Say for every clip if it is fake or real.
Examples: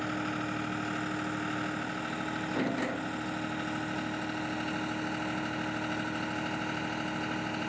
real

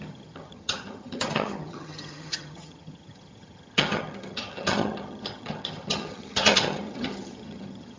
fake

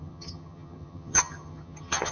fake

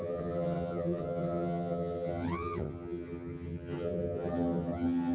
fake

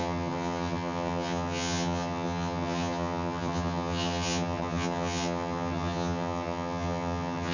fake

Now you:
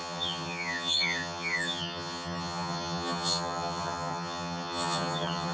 fake